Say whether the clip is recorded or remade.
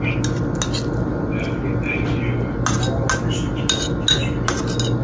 recorded